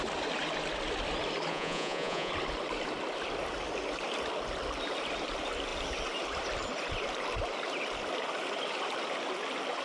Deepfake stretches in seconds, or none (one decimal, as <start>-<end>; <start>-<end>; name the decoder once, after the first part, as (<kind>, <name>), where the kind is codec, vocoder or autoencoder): 1.5-2.3 (vocoder, Vocos)